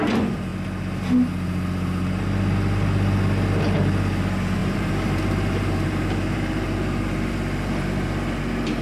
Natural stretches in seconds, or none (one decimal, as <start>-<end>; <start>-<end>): 0.0-4.6; 7.3-8.8